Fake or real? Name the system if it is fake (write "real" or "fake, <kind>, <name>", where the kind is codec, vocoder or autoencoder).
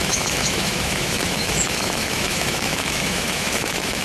fake, autoencoder, DAC-VAE